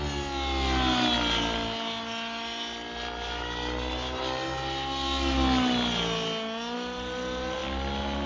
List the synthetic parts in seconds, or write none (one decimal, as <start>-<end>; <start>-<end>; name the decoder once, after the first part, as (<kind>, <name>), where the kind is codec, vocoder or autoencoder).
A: none